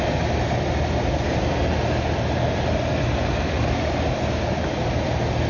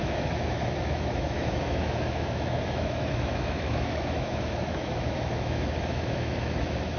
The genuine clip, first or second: first